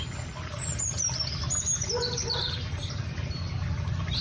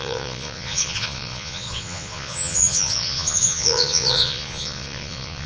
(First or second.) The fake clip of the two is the second